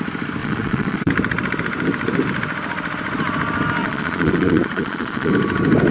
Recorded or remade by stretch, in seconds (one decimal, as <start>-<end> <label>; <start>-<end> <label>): 0.0-0.4 recorded; 0.4-1.1 remade; 1.1-3.8 recorded; 3.8-5.3 remade; 5.3-5.9 recorded